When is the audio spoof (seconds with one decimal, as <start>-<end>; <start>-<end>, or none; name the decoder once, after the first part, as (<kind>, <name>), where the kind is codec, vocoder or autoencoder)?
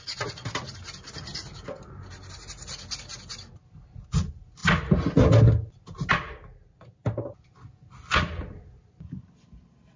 none